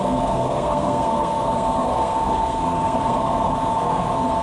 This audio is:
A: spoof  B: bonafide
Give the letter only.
A